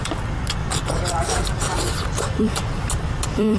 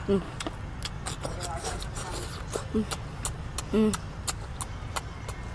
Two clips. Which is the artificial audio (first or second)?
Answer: first